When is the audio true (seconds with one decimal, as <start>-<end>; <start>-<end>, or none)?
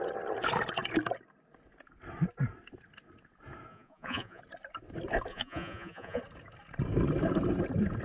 0.0-3.7; 4.4-5.3; 6.2-8.0